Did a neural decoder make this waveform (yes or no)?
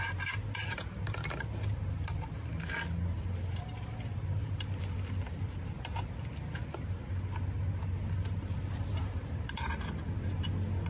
no